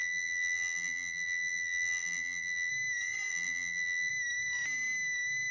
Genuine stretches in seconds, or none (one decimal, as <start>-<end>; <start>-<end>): 2.7-3.3; 4.1-5.5